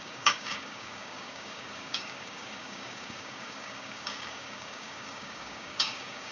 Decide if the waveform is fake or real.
fake